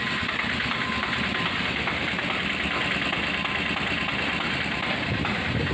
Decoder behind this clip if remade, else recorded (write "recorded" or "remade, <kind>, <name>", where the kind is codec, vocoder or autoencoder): recorded